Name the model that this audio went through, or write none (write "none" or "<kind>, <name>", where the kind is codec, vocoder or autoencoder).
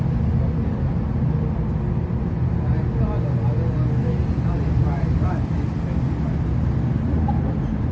none